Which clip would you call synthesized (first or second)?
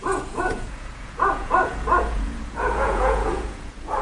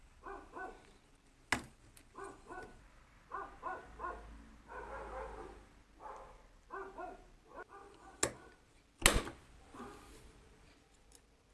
first